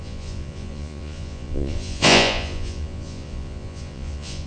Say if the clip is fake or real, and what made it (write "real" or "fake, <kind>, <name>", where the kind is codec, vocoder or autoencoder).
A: fake, vocoder, Vocos